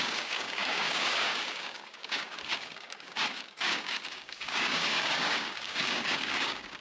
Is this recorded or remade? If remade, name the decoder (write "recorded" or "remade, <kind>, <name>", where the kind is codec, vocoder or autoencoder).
remade, codec, DAC